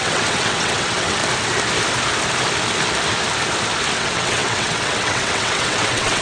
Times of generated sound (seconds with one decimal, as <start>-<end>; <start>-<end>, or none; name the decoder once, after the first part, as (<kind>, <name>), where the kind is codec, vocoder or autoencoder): 0.0-1.2 (vocoder, WaveNeXt); 4.0-6.2